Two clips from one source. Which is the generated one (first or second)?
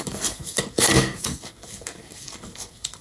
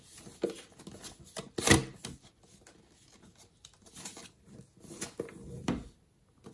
first